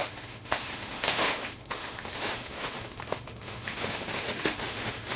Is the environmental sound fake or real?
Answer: fake